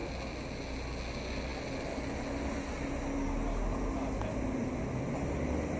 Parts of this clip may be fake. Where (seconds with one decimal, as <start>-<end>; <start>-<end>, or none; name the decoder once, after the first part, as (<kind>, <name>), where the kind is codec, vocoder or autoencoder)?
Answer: none